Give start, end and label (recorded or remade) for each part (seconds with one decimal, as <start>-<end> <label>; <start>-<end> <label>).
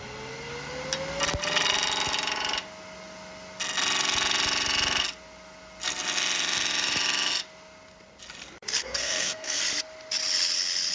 0.0-8.8 recorded; 8.8-9.6 remade; 9.6-10.9 recorded